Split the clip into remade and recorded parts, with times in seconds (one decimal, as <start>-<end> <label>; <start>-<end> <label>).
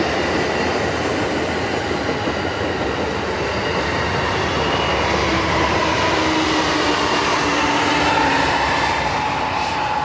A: 0.0-10.0 recorded